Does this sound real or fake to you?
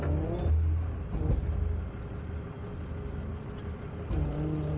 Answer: real